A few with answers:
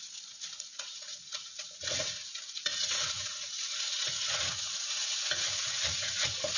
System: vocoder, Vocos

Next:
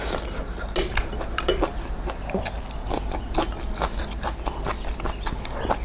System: none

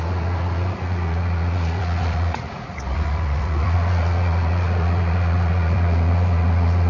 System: vocoder, Vocos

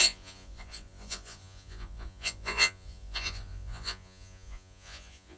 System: vocoder, Vocos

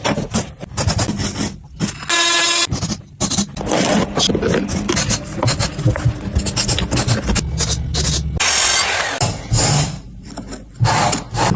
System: none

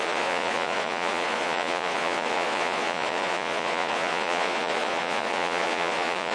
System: vocoder, Vocos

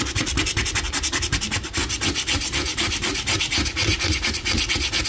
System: none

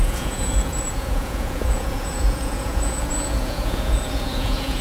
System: vocoder, Vocos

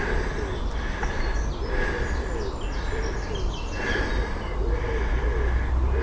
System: none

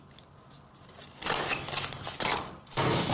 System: none